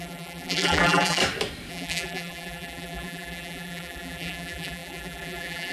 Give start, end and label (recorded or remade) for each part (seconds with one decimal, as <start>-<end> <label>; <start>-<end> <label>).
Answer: 0.0-1.2 remade; 1.2-1.7 recorded; 1.7-5.7 remade